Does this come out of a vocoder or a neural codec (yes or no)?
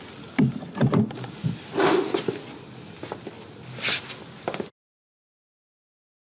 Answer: no